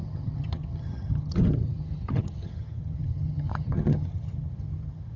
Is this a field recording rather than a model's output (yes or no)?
no